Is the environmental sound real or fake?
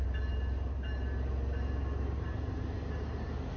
real